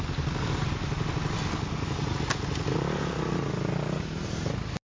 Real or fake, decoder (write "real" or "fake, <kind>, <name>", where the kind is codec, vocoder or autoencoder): real